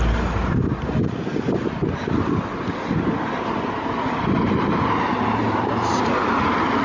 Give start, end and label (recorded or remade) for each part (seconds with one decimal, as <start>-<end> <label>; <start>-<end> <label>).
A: 0.0-0.4 remade; 0.4-3.5 recorded; 3.5-6.8 remade